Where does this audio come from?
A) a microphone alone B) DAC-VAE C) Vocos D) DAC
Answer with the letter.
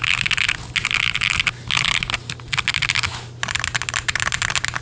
A